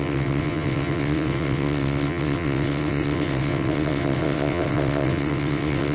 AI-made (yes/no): yes